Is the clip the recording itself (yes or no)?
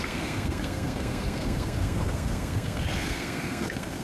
no